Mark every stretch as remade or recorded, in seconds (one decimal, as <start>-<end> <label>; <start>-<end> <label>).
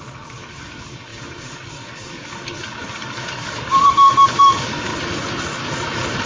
0.0-4.9 remade; 4.9-6.3 recorded